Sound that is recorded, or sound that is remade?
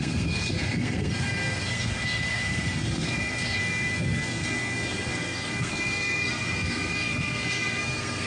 remade